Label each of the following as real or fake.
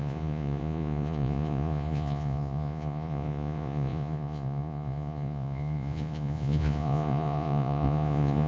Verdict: fake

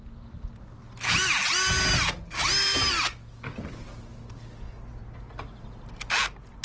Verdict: real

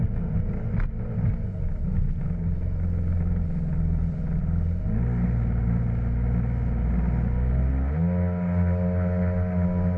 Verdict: real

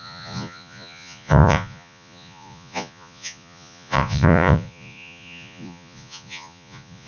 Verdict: fake